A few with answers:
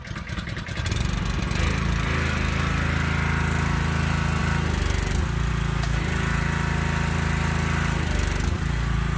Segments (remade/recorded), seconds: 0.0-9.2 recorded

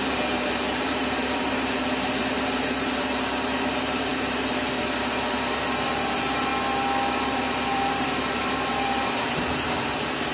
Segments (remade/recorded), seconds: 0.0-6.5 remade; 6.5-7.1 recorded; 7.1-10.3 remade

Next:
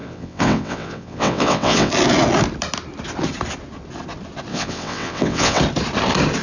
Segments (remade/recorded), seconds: 0.0-1.9 remade; 1.9-4.5 recorded; 4.5-5.6 remade; 5.6-6.4 recorded

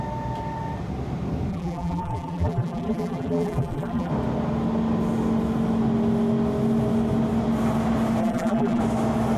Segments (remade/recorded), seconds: 0.0-1.5 recorded; 1.5-4.1 remade; 4.1-8.2 recorded; 8.2-8.8 remade; 8.8-9.4 recorded